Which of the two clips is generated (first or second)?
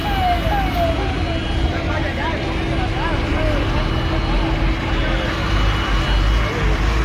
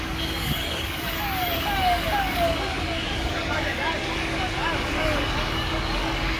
second